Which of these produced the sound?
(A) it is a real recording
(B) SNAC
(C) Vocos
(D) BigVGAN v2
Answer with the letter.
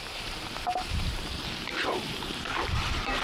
D